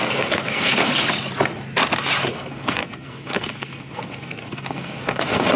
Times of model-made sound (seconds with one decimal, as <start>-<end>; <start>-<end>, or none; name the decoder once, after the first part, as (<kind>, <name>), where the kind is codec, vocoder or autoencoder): 0.0-0.9 (codec, SNAC); 2.3-5.6